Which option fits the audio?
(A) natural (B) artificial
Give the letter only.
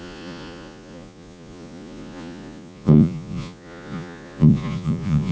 B